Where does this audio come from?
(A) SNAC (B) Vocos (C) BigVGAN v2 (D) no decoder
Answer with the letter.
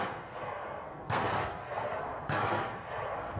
A